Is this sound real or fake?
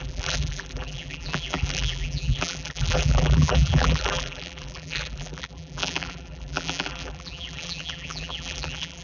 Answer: fake